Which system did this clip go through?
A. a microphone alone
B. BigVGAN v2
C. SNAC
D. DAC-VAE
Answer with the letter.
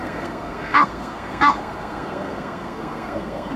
C